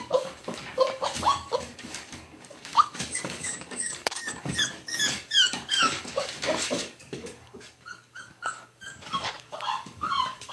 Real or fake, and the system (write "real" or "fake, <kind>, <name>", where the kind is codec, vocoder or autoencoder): fake, codec, DAC